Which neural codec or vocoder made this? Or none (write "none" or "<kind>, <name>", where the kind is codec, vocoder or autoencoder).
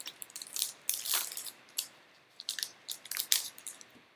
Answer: vocoder, BigVGAN v2